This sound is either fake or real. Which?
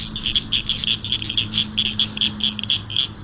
real